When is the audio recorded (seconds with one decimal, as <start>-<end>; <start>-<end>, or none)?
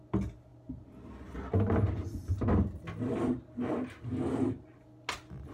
0.0-5.5